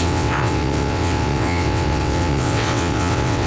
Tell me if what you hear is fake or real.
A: fake